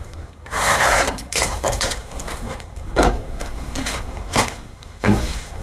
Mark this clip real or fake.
fake